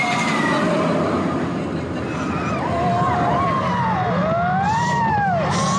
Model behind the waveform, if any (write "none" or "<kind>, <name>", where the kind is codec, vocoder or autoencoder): none